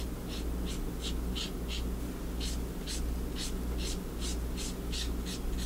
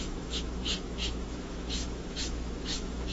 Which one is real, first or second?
first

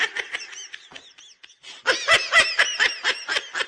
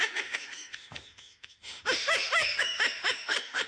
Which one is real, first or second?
first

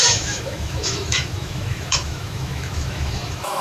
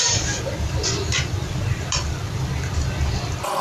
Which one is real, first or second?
second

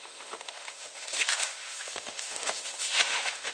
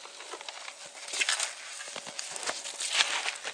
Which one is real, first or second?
second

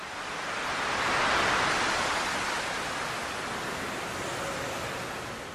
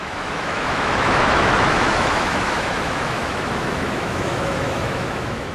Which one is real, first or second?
first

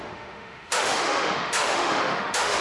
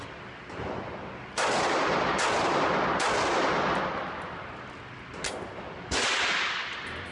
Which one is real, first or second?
second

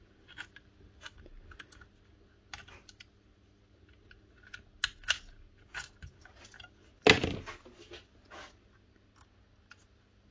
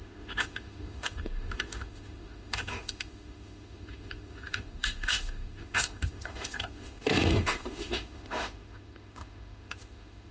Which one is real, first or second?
first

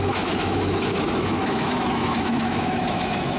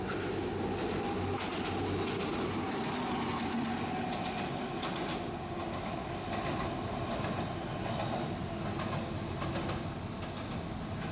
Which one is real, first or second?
second